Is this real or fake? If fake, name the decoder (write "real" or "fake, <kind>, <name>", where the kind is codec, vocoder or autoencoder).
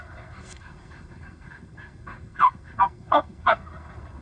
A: fake, codec, SNAC